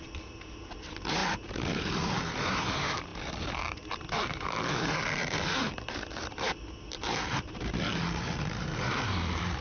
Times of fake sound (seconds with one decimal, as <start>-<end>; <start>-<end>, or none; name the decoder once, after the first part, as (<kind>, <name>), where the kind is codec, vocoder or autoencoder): 0.0-9.6 (vocoder, BigVGAN v2)